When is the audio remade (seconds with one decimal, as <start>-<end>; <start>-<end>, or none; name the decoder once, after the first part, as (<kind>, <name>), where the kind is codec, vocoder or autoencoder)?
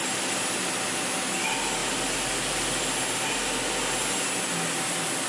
none